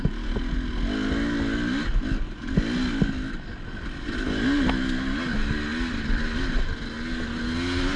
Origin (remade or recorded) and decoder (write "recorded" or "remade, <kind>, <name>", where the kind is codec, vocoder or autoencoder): recorded